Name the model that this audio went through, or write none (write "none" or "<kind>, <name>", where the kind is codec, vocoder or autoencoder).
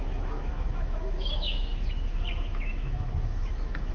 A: autoencoder, DAC-VAE